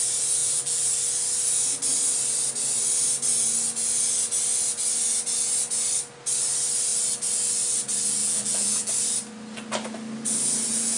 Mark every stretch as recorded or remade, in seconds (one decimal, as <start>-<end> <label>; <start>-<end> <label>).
0.0-0.4 recorded; 0.4-0.9 remade; 0.9-8.2 recorded; 8.2-8.9 remade; 8.9-11.0 recorded